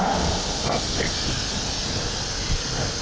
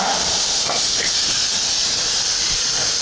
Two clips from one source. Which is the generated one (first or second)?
second